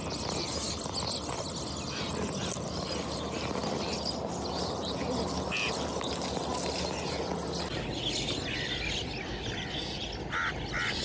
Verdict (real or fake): real